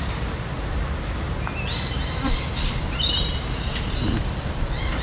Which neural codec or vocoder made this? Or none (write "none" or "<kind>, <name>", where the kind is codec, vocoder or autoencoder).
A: none